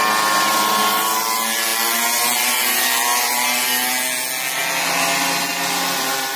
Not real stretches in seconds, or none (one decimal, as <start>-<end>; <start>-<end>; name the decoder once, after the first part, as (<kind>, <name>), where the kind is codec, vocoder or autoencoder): none